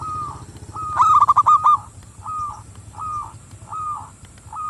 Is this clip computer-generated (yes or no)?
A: no